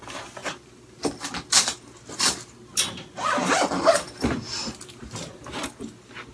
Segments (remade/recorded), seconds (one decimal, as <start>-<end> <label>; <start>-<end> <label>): 0.0-0.4 recorded; 0.4-1.0 remade; 1.0-3.4 recorded; 3.4-5.7 remade; 5.7-6.3 recorded